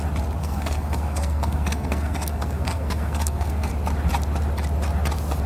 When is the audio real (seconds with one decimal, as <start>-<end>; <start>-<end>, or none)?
0.0-0.4; 3.7-5.5